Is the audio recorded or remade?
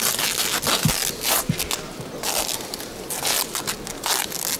recorded